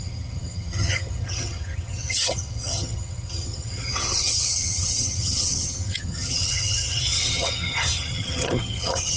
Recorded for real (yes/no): no